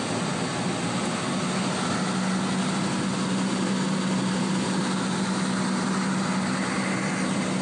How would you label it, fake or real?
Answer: real